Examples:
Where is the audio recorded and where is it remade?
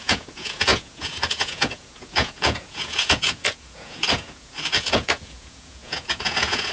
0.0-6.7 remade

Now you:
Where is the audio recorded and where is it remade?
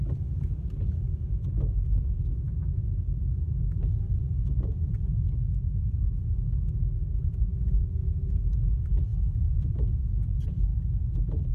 0.0-9.1 recorded; 9.1-9.8 remade; 9.8-11.5 recorded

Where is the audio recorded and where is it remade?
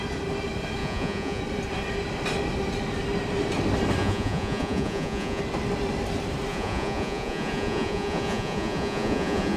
0.0-0.8 recorded; 0.8-1.4 remade; 1.4-4.0 recorded; 4.0-5.4 remade; 5.4-6.5 recorded; 6.5-9.6 remade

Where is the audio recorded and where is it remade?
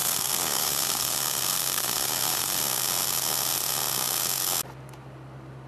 0.0-2.6 remade; 2.6-5.7 recorded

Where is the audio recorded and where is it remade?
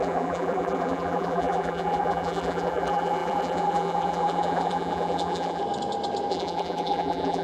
0.0-5.6 remade; 5.6-6.3 recorded; 6.3-7.4 remade